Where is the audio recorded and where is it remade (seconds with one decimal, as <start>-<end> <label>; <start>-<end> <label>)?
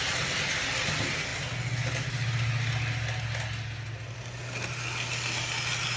0.0-6.0 recorded